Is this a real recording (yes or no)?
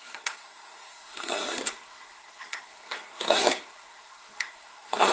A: no